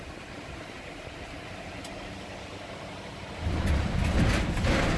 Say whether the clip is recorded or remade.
remade